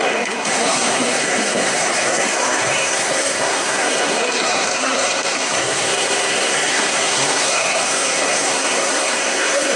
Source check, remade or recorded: remade